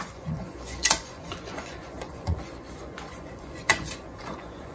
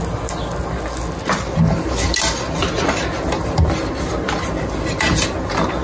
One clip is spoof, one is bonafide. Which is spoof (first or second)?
first